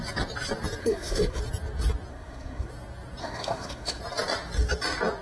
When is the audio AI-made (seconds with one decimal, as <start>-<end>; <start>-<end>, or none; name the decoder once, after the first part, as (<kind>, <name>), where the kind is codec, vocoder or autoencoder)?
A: 0.8-1.4 (codec, SNAC); 2.1-2.7; 3.2-4.0